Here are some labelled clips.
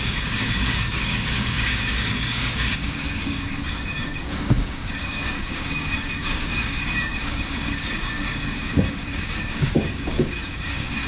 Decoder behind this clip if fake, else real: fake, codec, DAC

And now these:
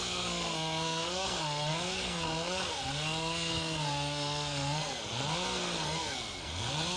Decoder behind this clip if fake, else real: fake, codec, SNAC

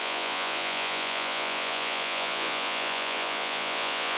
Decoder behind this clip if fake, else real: fake, vocoder, Vocos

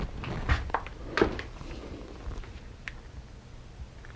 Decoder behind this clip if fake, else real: real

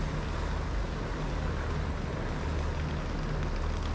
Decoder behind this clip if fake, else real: real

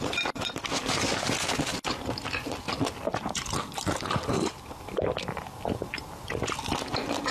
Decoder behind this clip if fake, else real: real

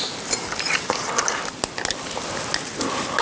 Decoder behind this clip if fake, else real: real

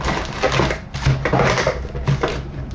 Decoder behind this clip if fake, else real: real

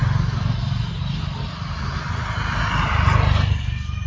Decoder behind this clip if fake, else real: real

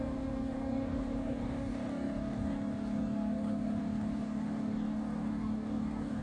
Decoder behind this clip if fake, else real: fake, codec, DAC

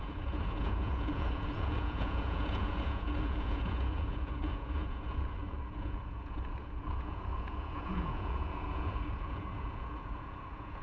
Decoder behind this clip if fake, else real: fake, vocoder, Vocos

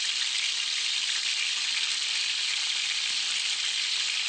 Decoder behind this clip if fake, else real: real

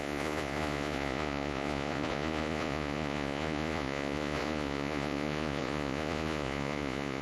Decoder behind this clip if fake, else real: fake, vocoder, Vocos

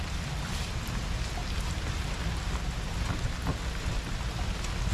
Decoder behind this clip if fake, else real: real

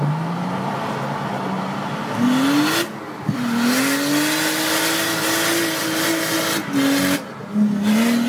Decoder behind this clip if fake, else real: real